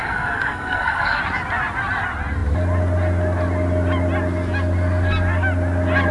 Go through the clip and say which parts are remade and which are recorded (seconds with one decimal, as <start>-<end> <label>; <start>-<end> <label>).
0.0-1.2 remade; 1.2-6.1 recorded